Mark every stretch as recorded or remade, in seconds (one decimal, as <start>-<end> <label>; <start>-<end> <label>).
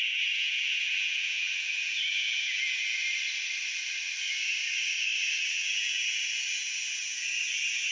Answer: 0.0-3.0 remade; 3.0-5.4 recorded; 5.4-7.9 remade